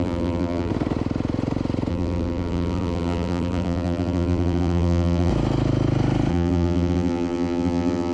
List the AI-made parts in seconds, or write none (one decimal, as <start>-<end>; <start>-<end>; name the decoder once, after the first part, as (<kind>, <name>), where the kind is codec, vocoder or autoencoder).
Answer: 0.0-0.7 (vocoder, BigVGAN v2); 1.9-5.3; 6.3-8.1